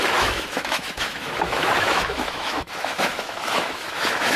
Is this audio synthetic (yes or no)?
yes